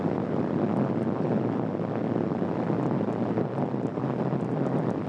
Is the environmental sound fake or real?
real